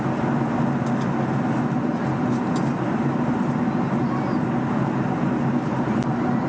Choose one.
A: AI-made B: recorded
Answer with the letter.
B